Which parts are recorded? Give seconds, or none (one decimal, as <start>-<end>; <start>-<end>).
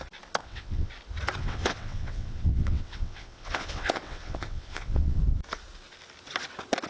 0.0-0.4; 0.9-1.4; 5.2-6.9